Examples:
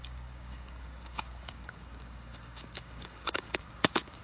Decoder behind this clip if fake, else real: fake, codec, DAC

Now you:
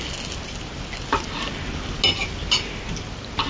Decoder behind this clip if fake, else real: real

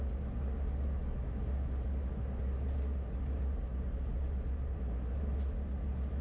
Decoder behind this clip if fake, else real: real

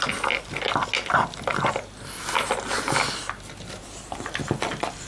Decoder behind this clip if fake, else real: real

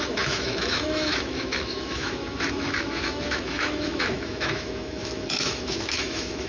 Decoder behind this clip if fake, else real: fake, autoencoder, DAC-VAE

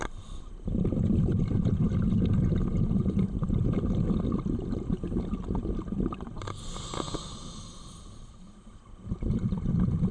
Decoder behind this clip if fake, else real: real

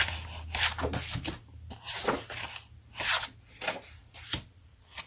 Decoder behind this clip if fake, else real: real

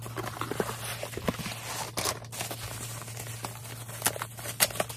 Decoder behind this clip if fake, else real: real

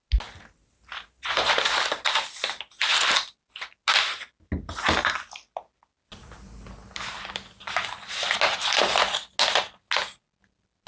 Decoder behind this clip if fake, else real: real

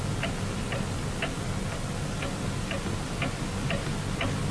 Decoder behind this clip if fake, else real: real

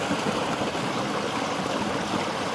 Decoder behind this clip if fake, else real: real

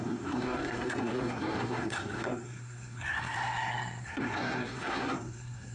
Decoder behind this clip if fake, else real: fake, codec, SNAC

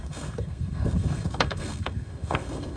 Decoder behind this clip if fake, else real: fake, codec, SNAC